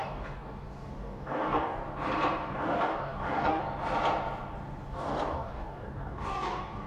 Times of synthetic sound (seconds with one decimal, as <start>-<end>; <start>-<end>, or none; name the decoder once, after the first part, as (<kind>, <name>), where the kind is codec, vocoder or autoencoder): 0.0-1.8 (codec, DAC); 2.5-3.6; 4.9-6.9